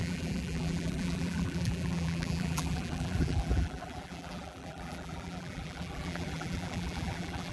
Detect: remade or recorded remade